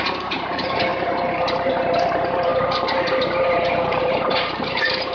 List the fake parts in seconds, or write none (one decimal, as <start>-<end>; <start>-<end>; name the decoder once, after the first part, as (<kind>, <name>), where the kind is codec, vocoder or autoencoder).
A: 0.0-5.1 (vocoder, BigVGAN v2)